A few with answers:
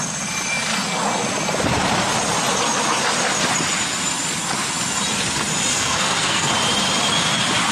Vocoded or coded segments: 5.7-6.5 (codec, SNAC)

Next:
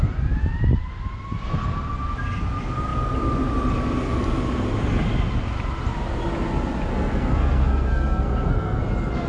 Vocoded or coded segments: 6.9-8.8 (codec, SNAC)

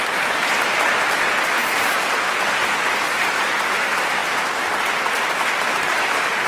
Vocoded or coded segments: none